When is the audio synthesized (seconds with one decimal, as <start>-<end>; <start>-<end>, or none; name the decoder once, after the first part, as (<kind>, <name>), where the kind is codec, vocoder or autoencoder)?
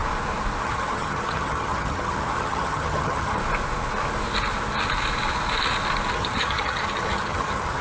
0.6-3.4 (vocoder, HiFi-GAN); 6.1-7.8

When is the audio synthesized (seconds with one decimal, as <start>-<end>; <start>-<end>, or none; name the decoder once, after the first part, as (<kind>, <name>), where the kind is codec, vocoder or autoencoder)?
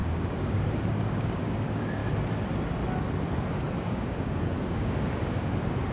0.0-2.0 (codec, DAC); 3.8-5.9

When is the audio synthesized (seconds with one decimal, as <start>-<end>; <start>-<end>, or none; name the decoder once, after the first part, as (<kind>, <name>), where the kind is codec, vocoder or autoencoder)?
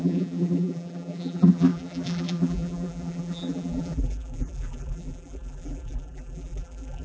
0.0-7.0 (vocoder, BigVGAN v2)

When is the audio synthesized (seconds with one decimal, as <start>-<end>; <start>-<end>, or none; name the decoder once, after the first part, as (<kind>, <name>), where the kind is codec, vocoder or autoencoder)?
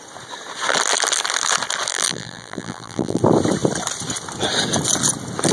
1.9-3.2 (vocoder, BigVGAN v2)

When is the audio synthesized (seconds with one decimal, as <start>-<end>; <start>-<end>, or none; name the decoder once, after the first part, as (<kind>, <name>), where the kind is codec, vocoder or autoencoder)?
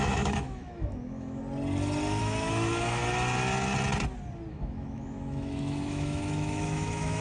0.0-1.4 (autoencoder, DAC-VAE); 2.2-3.0; 4.5-7.2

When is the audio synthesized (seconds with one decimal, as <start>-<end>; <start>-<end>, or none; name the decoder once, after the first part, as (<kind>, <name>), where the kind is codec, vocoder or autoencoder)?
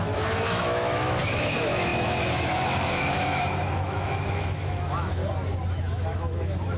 0.0-5.2 (autoencoder, DAC-VAE); 5.7-6.8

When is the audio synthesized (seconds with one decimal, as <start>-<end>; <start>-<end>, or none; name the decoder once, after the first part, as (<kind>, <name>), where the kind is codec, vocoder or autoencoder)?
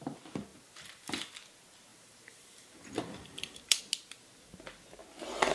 0.5-1.3 (vocoder, BigVGAN v2); 1.9-3.8